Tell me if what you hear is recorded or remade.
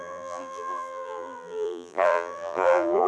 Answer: remade